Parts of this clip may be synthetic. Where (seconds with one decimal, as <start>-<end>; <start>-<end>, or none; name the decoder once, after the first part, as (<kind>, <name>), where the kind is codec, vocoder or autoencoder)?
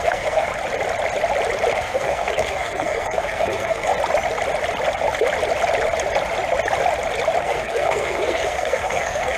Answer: 0.0-0.5 (codec, SNAC); 1.7-3.9; 7.4-9.4